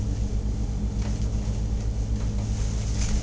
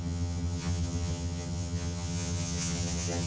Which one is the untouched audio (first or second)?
first